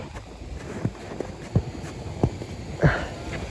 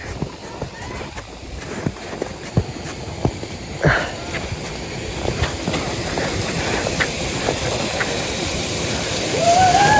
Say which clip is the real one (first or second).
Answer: first